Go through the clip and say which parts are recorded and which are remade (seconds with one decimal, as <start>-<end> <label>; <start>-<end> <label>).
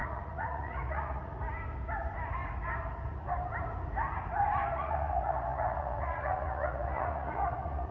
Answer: 0.0-1.4 remade; 1.4-4.7 recorded; 4.7-7.9 remade